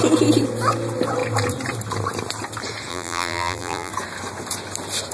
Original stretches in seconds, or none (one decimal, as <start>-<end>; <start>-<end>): 0.0-2.9; 3.9-5.1